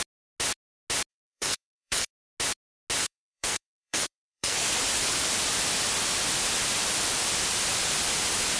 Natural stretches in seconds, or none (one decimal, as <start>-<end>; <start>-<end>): 0.0-1.1; 2.1-3.0; 4.8-8.6